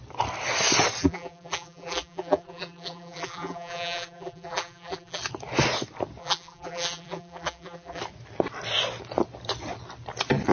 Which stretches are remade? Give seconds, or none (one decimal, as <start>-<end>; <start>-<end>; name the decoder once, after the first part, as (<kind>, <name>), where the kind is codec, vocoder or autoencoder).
1.0-5.2 (vocoder, BigVGAN v2); 6.2-8.0

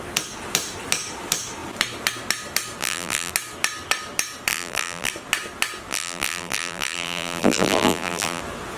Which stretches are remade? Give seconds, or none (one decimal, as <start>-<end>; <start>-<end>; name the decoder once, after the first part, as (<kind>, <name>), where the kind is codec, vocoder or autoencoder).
2.8-3.3 (vocoder, BigVGAN v2); 4.5-5.1; 5.9-8.4

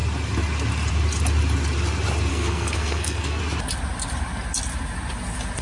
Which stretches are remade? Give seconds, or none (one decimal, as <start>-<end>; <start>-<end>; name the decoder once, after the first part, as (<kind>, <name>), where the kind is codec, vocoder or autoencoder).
2.3-3.4 (codec, SNAC)

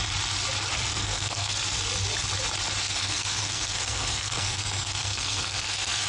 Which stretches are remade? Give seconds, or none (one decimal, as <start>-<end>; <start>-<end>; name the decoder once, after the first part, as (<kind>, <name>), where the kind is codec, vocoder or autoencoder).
0.9-1.5 (codec, SNAC); 2.8-6.1

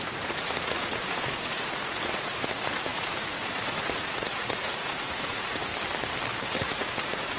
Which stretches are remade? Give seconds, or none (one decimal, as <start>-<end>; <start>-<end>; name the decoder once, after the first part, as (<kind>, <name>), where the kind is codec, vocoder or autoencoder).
0.0-5.7 (vocoder, Vocos); 6.4-7.4